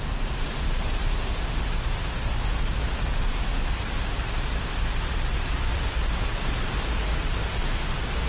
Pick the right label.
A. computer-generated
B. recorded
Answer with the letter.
B